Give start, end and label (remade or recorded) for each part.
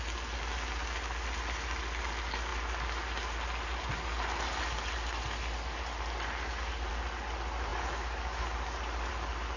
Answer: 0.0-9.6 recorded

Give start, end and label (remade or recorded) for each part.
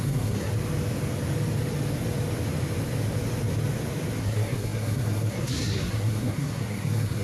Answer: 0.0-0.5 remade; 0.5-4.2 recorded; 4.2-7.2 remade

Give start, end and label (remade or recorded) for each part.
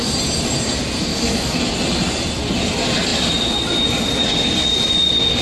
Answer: 0.0-1.1 recorded; 1.1-1.7 remade; 1.7-5.4 recorded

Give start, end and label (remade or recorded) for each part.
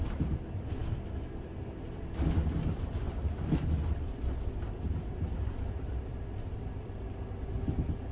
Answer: 0.0-8.1 recorded